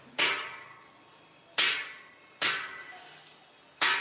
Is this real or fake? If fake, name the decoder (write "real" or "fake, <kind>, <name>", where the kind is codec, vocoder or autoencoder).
real